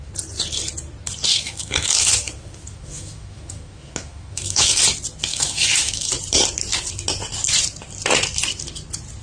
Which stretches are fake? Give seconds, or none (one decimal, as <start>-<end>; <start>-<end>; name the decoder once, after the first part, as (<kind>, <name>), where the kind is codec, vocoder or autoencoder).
1.3-4.8 (autoencoder, DAC-VAE); 5.3-6.1

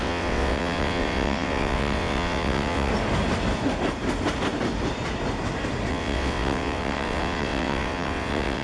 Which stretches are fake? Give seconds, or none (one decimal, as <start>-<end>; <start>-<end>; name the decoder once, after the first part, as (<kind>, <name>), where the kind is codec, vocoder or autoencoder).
0.0-2.9 (vocoder, WaveNeXt); 5.9-8.6

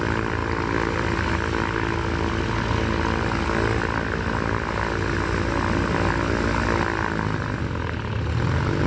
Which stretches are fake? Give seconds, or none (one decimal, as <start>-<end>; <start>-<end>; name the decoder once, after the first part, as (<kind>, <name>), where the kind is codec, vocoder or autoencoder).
none

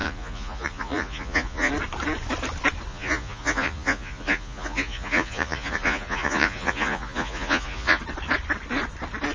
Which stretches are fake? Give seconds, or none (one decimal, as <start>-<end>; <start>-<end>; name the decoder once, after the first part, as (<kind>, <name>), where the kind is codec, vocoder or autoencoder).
0.0-1.7 (vocoder, Vocos); 2.9-8.0